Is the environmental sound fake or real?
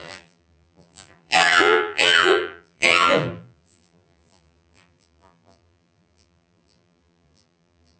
fake